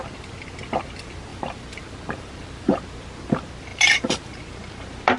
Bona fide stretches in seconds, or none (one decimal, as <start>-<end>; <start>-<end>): 0.0-1.3; 2.8-3.7; 4.3-5.2